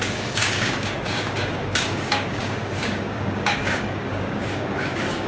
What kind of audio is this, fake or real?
fake